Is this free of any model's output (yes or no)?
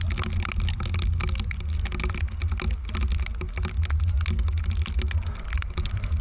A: yes